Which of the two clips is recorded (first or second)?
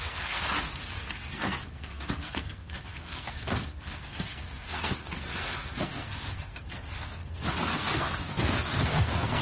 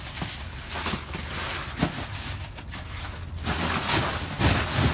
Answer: second